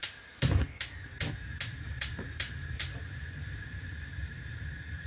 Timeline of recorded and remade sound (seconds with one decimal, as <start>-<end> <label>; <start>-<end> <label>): 0.0-0.6 remade; 0.6-1.7 recorded; 1.7-5.1 remade